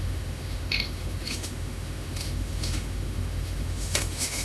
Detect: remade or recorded remade